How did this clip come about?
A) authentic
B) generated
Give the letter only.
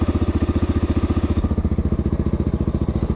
A